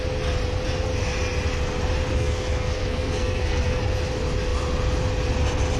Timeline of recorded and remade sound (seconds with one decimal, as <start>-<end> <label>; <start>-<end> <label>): 0.0-2.1 recorded; 2.1-3.8 remade; 3.8-5.8 recorded